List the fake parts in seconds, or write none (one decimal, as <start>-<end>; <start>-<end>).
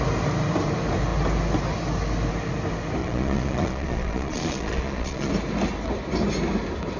3.0-5.3